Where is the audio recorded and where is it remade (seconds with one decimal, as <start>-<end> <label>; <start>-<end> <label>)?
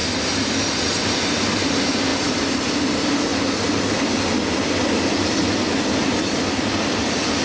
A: 0.0-7.4 recorded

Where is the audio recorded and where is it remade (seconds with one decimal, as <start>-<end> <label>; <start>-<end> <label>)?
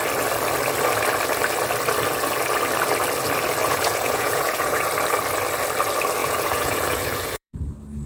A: 0.0-3.6 recorded; 3.6-4.9 remade; 4.9-6.2 recorded; 6.2-7.6 remade; 7.6-8.1 recorded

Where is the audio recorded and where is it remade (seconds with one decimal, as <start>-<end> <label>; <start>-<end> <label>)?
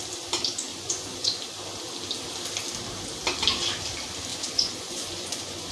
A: 0.0-0.7 recorded; 0.7-1.4 remade; 1.4-4.3 recorded; 4.3-5.7 remade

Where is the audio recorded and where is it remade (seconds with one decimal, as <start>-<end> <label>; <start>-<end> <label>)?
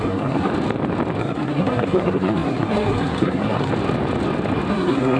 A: 0.0-0.5 remade; 0.5-1.2 recorded; 1.2-3.7 remade; 3.7-4.7 recorded; 4.7-5.2 remade